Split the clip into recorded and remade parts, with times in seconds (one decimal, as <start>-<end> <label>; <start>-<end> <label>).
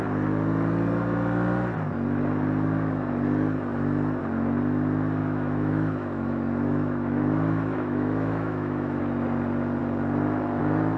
0.0-5.2 recorded; 5.2-9.0 remade; 9.0-11.0 recorded